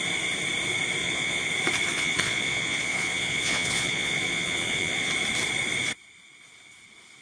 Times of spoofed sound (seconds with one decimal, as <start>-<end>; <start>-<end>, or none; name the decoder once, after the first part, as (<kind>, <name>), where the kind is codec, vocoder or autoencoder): 1.0-1.5 (vocoder, Vocos); 1.9-5.1

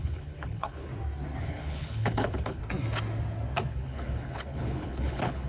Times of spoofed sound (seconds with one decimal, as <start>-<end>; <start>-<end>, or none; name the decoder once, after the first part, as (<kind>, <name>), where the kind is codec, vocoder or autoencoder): 0.0-0.9 (codec, HILCodec); 1.4-2.6; 3.7-5.5

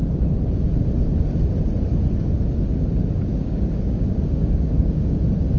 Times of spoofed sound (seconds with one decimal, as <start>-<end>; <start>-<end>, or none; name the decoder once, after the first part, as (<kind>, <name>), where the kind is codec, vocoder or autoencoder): 3.3-5.1 (codec, DAC)